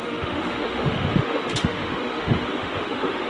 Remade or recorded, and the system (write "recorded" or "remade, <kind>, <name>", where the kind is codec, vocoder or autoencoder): remade, autoencoder, DAC-VAE